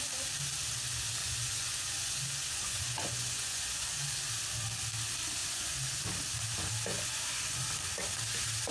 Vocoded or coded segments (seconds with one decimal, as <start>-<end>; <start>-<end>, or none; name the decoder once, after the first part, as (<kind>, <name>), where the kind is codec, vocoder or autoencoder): 1.2-4.3 (vocoder, Vocos); 5.4-6.0; 6.9-7.7